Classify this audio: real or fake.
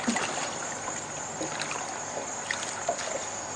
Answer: real